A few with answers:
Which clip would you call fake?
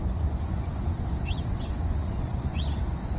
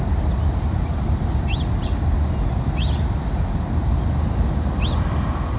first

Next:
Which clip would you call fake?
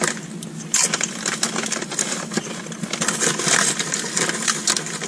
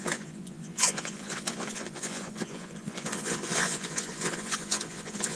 second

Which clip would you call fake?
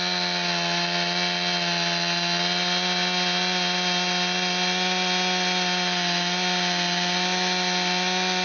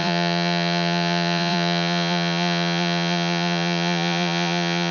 second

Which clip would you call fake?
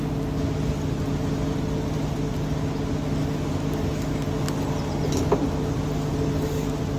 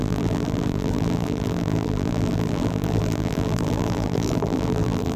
second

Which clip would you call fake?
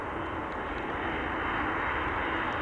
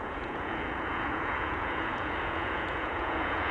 second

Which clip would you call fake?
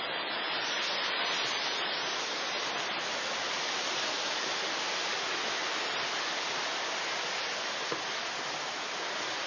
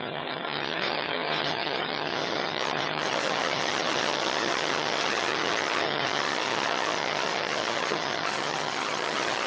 second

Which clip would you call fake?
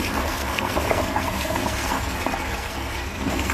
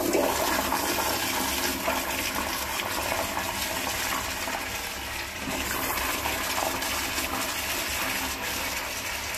first